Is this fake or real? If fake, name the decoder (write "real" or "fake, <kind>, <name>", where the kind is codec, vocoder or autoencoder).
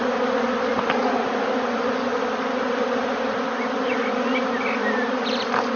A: real